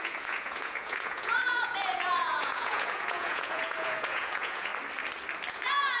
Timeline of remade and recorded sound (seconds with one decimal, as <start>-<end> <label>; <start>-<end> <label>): 0.0-4.7 remade; 4.7-5.5 recorded; 5.5-6.0 remade